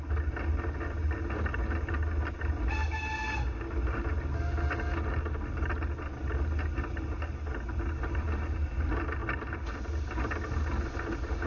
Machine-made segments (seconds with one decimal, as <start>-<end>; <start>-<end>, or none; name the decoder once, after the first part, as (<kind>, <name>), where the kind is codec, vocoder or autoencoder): none